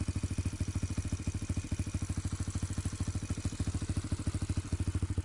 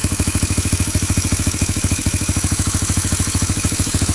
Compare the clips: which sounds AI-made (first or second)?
second